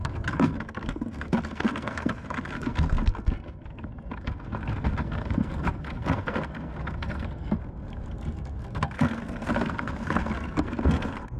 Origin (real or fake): fake